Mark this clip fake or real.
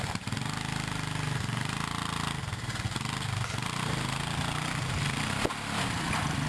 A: real